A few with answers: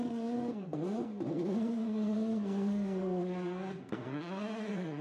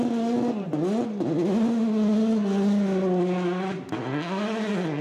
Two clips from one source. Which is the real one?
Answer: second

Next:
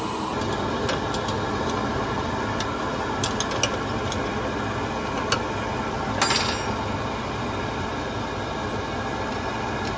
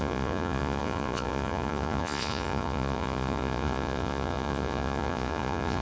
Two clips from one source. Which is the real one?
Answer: first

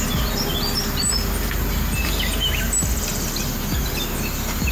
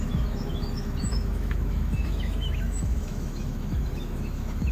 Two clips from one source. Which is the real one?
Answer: first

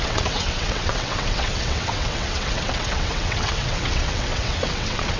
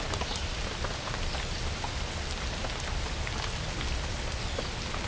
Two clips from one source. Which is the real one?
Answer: second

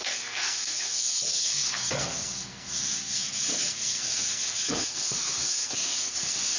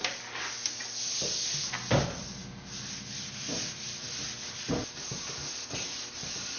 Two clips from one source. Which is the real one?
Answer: second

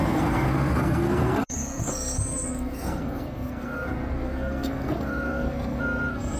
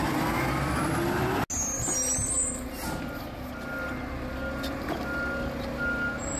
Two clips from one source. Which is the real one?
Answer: second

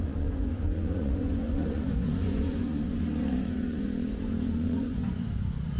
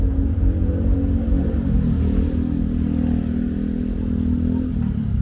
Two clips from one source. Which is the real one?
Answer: second